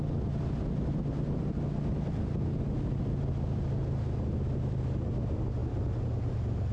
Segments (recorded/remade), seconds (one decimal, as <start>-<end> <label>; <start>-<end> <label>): 0.0-6.7 recorded